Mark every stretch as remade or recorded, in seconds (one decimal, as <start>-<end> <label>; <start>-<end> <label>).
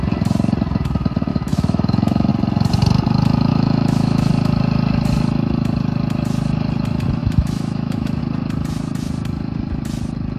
0.0-1.3 recorded; 1.3-2.3 remade; 2.3-3.5 recorded; 3.5-4.3 remade; 4.3-7.2 recorded; 7.2-8.2 remade; 8.2-10.4 recorded